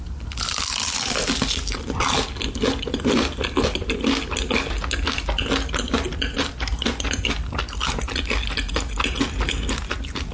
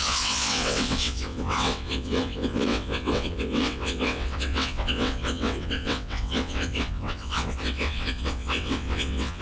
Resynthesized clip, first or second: second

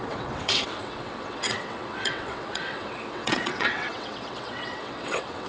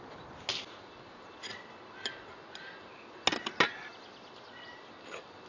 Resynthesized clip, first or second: first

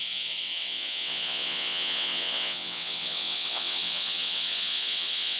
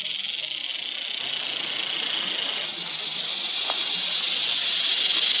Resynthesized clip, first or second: first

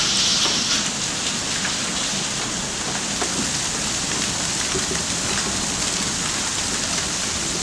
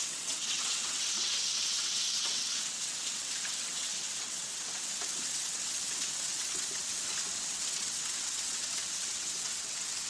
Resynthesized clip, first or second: second